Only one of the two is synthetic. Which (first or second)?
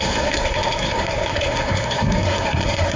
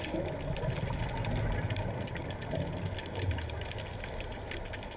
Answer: first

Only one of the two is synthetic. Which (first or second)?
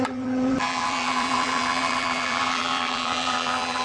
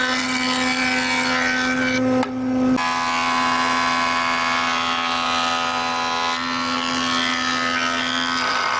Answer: first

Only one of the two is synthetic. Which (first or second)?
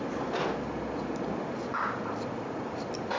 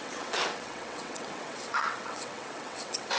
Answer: second